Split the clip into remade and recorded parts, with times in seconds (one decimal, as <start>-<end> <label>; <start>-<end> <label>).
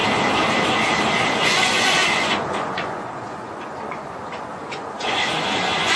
0.0-1.3 recorded; 1.3-6.0 remade